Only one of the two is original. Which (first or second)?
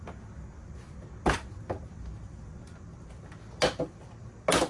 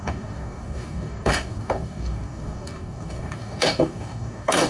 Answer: first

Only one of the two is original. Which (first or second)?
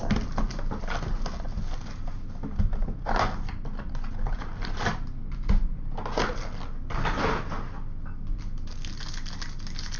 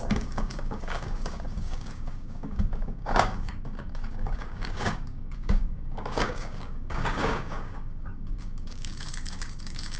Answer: first